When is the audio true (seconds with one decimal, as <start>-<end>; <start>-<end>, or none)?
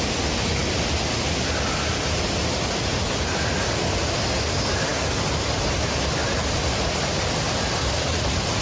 0.0-8.6